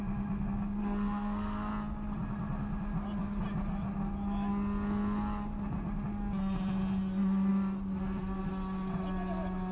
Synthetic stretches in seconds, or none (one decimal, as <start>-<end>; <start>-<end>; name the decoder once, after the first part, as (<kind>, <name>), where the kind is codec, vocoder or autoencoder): 0.8-1.7 (codec, SNAC)